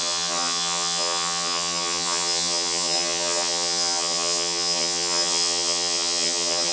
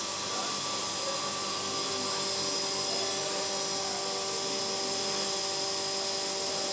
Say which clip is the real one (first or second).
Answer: second